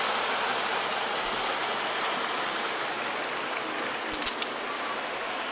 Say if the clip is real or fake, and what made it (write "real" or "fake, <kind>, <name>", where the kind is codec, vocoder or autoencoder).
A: real